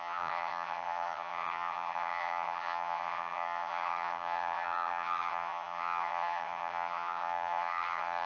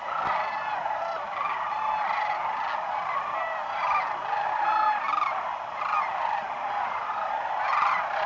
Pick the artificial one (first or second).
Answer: first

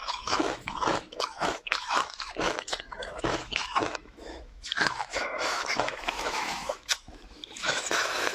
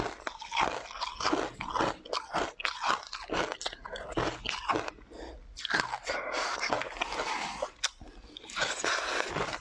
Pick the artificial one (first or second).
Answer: first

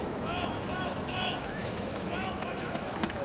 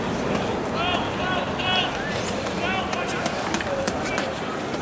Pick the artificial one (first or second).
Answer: first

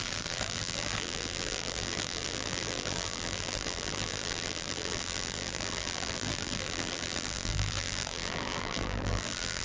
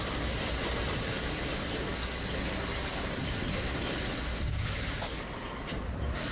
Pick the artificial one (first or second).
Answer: first